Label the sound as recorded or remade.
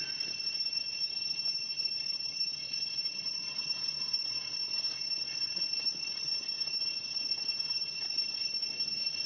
remade